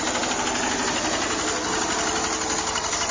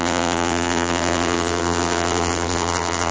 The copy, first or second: second